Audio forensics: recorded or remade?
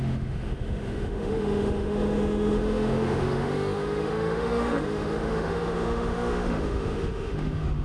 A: remade